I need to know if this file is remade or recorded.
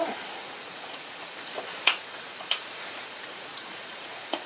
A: remade